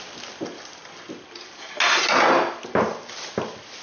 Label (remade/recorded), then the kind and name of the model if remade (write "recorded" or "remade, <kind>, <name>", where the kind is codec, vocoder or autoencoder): recorded